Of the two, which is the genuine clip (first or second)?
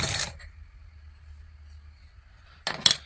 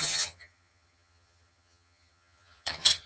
first